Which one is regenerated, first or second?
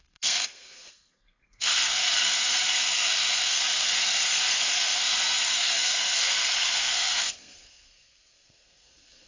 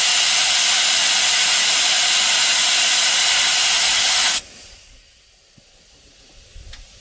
first